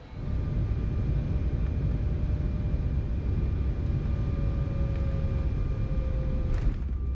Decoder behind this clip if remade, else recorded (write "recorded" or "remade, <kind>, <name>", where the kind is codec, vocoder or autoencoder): recorded